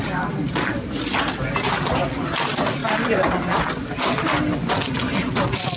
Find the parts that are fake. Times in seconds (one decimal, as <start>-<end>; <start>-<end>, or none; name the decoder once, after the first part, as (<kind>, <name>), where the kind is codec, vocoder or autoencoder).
none